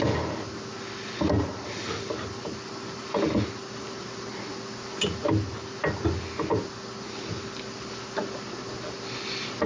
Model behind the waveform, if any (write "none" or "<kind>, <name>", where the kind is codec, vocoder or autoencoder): none